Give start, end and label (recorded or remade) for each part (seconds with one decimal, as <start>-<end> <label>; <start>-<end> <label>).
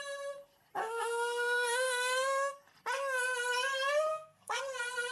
0.0-0.8 recorded; 0.8-2.5 remade; 2.5-4.1 recorded; 4.1-4.6 remade; 4.6-5.1 recorded